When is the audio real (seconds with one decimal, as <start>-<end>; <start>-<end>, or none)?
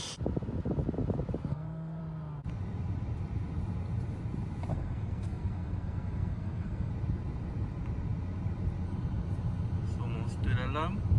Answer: 0.0-1.5; 2.0-4.7; 6.9-11.2